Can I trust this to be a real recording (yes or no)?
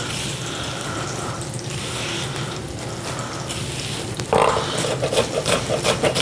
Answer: yes